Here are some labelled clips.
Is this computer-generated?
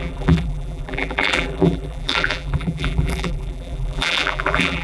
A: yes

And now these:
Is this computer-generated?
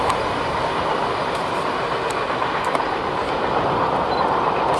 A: yes